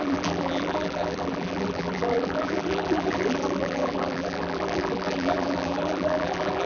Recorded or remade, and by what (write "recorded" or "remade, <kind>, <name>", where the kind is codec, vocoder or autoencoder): remade, vocoder, BigVGAN v2